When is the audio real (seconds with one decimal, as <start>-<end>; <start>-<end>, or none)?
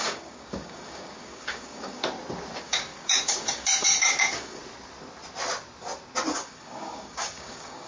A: 2.0-2.6; 4.6-6.3